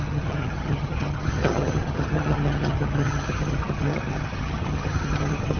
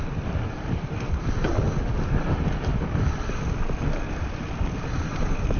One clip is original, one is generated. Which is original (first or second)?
second